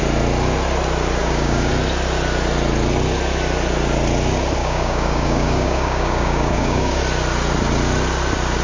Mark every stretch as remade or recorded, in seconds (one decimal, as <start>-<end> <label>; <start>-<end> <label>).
0.0-1.2 recorded; 1.2-1.7 remade; 1.7-4.6 recorded; 4.6-7.0 remade; 7.0-8.6 recorded